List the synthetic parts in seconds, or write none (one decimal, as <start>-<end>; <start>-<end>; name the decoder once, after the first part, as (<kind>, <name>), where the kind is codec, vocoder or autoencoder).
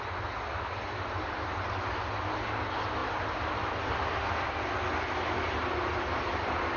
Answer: none